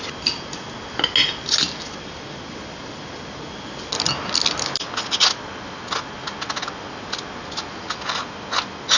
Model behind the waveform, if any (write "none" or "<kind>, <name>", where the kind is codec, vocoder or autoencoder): none